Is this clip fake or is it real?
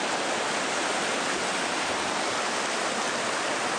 real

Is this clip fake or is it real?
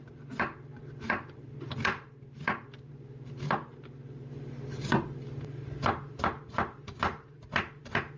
fake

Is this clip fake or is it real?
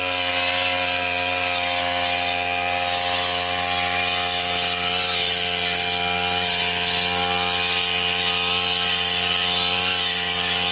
real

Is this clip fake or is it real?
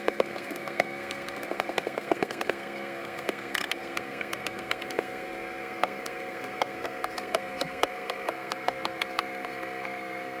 fake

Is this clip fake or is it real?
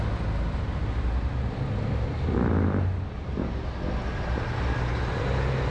real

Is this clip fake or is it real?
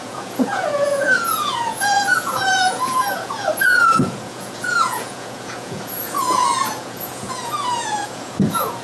fake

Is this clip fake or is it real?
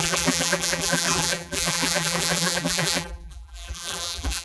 fake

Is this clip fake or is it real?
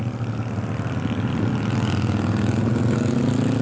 real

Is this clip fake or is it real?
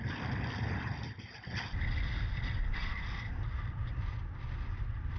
real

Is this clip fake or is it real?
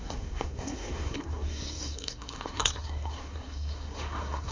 fake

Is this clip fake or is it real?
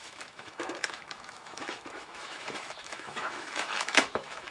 fake